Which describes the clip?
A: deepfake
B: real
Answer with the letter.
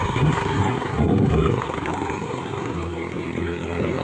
A